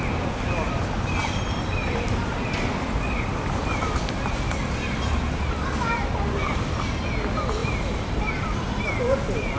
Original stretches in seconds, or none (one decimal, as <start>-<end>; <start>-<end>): 0.0-1.2; 5.2-7.6; 8.1-9.6